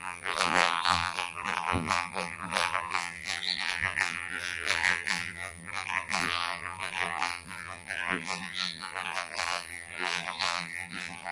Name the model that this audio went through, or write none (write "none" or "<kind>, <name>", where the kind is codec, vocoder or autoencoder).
vocoder, BigVGAN v2